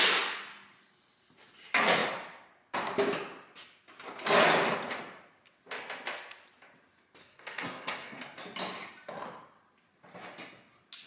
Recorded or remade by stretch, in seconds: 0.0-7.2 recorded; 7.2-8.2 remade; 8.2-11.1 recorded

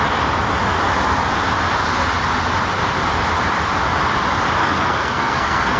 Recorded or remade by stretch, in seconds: 0.0-4.6 recorded; 4.6-5.8 remade

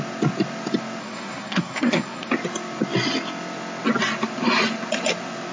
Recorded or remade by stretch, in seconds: 0.0-1.0 recorded; 1.0-2.3 remade; 2.3-5.5 recorded